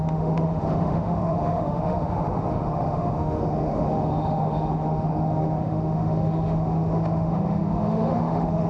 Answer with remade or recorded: remade